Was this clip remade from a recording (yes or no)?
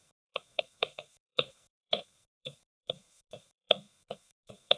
yes